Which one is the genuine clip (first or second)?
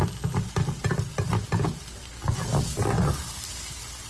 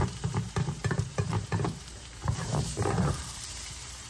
first